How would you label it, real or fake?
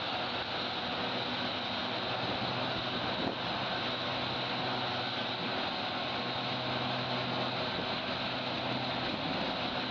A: real